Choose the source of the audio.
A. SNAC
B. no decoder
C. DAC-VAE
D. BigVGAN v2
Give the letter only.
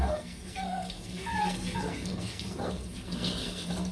A